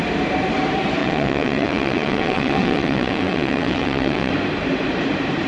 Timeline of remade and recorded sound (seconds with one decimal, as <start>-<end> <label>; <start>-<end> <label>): 0.0-1.0 recorded; 1.0-4.3 remade; 4.3-5.5 recorded